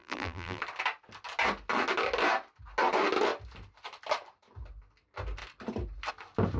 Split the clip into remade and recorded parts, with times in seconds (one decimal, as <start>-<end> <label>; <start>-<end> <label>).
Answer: 0.0-0.6 remade; 0.6-6.6 recorded